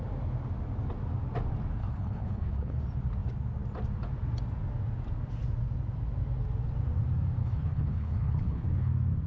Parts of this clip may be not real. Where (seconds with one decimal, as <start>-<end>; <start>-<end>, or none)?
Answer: 1.8-2.8; 7.4-8.9